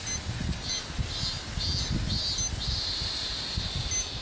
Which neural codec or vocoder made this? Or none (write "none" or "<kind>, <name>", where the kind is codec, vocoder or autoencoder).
none